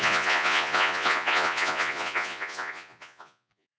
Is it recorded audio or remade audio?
remade